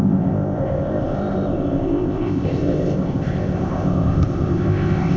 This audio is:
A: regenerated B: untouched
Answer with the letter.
A